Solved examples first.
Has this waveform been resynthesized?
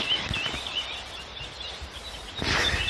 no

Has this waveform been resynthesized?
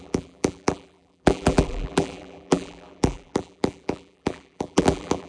yes